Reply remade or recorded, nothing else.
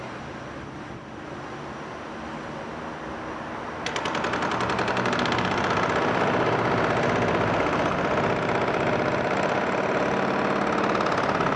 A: remade